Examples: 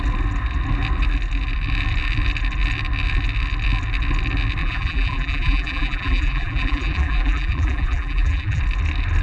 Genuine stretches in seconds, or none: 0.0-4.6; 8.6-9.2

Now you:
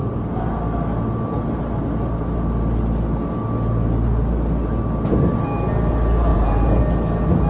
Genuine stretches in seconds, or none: 0.0-6.3; 6.8-7.5